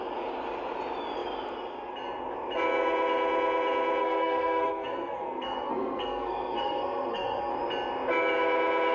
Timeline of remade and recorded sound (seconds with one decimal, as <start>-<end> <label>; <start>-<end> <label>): 0.0-4.0 recorded; 4.0-7.5 remade; 7.5-8.9 recorded